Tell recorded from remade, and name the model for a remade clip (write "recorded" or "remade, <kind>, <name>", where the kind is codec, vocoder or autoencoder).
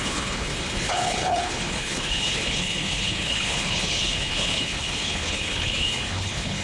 remade, codec, HILCodec